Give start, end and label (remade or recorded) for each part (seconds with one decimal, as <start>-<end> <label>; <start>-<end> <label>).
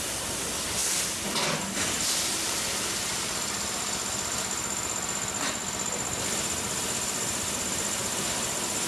0.0-8.9 recorded